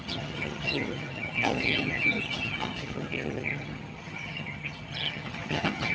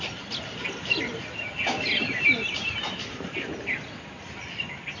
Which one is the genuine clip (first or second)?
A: second